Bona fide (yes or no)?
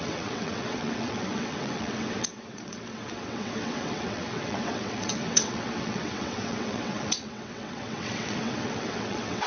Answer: no